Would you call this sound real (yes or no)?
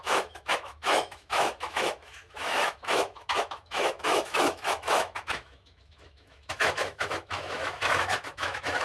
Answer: no